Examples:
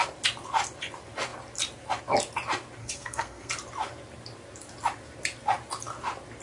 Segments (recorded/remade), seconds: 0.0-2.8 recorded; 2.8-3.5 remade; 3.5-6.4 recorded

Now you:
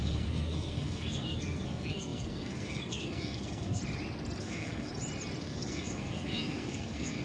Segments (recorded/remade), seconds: 0.0-3.8 remade; 3.8-4.4 recorded; 4.4-4.9 remade; 4.9-5.4 recorded; 5.4-7.2 remade

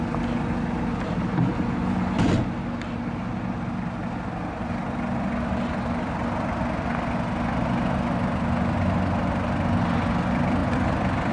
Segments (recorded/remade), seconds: 0.0-11.3 recorded